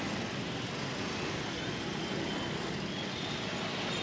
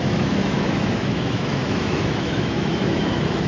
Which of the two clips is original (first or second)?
first